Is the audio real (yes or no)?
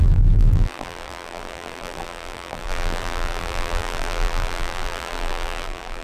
no